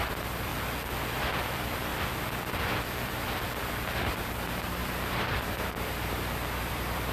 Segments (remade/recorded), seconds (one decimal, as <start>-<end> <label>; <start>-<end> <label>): 0.0-0.5 remade; 0.5-1.2 recorded; 1.2-1.9 remade; 1.9-4.0 recorded; 4.0-7.1 remade